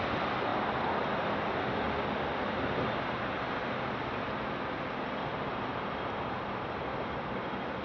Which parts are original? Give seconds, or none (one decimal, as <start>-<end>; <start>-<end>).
0.0-7.8